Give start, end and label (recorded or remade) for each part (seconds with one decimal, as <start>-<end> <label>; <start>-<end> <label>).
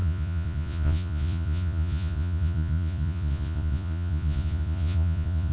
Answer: 0.0-5.5 remade